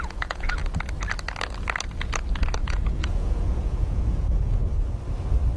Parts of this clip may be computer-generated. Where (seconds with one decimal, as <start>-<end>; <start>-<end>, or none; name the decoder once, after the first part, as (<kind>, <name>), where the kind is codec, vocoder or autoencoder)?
0.0-0.6 (vocoder, Vocos); 2.7-4.6